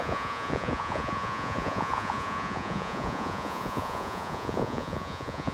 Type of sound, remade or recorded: remade